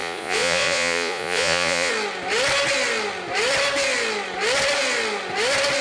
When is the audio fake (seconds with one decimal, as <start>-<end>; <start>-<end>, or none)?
0.0-1.9